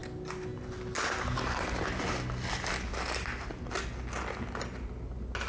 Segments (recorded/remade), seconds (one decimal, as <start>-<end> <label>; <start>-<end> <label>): 0.0-5.5 recorded